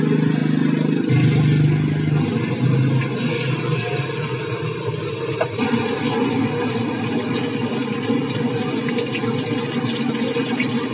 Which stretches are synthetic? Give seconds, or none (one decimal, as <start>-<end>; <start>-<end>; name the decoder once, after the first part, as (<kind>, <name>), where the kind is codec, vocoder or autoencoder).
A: none